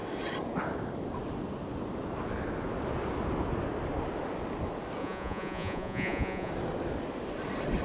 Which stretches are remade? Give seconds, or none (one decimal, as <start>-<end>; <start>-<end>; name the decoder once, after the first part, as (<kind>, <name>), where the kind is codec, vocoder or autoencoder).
5.0-6.5 (vocoder, Vocos)